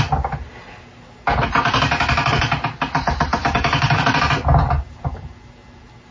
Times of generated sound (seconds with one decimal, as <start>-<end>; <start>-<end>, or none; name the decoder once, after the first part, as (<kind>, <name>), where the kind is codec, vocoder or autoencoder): 3.4-4.0 (codec, DAC)

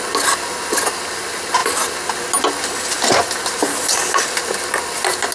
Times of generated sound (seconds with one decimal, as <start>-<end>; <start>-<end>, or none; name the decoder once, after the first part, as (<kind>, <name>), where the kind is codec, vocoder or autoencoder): none